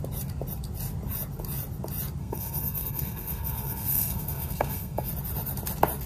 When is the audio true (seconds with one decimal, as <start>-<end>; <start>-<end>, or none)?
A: 0.0-2.2; 5.1-6.1